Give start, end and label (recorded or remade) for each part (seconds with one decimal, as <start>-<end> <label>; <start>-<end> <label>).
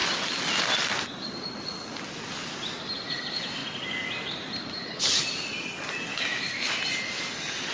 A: 0.0-6.1 recorded; 6.1-6.8 remade; 6.8-7.7 recorded